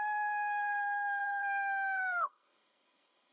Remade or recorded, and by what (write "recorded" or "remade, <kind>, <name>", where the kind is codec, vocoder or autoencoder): remade, codec, SNAC